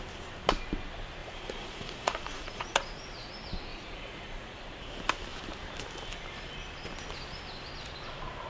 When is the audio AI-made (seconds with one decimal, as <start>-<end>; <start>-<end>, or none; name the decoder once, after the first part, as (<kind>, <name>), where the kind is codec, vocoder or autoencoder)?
1.2-3.3 (vocoder, Vocos); 3.7-4.6